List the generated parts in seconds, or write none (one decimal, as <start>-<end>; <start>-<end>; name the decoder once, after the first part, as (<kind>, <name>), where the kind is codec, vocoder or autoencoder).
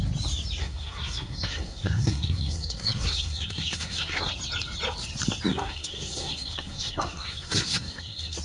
0.6-4.3 (codec, SNAC); 5.5-8.4